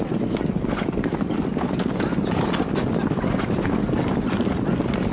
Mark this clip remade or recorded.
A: recorded